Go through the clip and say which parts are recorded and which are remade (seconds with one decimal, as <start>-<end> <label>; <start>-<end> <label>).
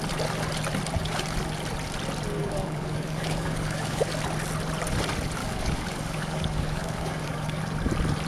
0.0-2.4 recorded; 2.4-4.1 remade; 4.1-5.4 recorded; 5.4-7.6 remade; 7.6-8.3 recorded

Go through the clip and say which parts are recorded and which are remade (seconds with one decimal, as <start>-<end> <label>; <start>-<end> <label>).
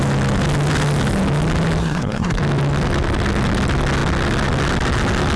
0.0-1.8 recorded; 1.8-2.4 remade; 2.4-5.4 recorded